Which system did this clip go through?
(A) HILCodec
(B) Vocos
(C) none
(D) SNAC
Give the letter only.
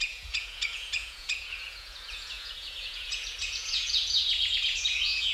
B